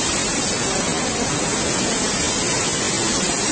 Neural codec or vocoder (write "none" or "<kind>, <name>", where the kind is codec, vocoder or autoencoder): none